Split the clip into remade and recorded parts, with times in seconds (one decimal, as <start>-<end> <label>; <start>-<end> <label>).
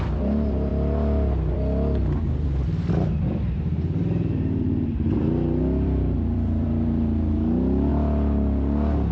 0.0-0.7 remade; 0.7-1.5 recorded; 1.5-7.9 remade; 7.9-9.1 recorded